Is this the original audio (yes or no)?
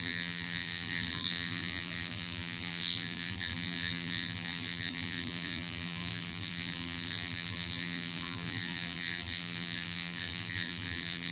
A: no